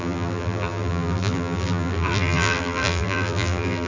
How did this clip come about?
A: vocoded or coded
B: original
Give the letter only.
A